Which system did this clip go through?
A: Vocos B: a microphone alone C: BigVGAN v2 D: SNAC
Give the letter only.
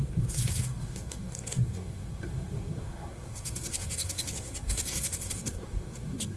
D